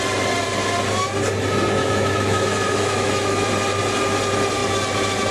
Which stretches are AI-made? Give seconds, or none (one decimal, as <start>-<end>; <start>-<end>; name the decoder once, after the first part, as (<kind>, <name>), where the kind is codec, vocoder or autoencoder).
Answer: 1.8-3.5 (autoencoder, DAC-VAE)